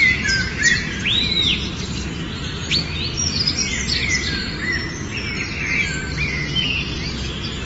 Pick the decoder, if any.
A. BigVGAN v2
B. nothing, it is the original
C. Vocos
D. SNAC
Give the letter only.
B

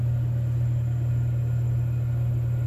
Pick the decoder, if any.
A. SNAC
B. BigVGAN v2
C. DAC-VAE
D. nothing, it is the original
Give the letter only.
D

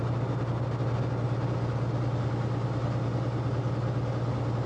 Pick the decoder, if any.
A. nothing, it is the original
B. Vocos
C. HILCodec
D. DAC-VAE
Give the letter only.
A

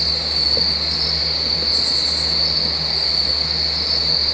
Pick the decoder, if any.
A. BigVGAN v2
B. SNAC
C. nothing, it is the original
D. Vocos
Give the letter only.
C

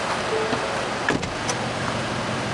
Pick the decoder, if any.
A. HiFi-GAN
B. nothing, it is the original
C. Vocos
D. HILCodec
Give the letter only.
B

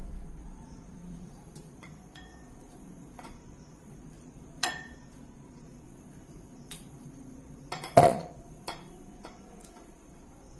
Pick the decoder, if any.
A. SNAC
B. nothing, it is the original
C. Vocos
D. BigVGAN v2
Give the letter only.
C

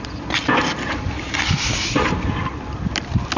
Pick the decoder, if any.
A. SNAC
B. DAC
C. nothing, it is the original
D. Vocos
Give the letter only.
C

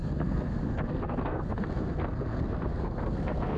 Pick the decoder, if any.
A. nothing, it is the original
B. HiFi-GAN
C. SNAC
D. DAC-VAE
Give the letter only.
C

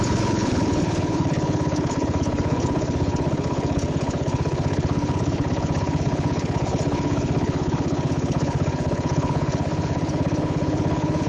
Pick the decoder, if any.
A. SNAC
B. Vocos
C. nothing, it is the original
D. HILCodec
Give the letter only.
D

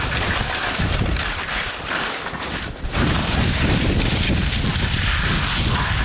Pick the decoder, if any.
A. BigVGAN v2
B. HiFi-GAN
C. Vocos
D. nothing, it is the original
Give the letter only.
D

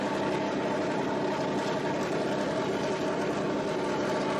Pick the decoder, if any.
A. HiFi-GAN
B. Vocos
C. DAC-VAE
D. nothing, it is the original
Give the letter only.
D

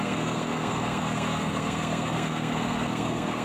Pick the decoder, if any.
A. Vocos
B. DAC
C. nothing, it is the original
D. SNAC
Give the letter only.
D